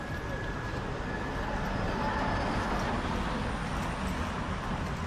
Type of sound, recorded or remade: recorded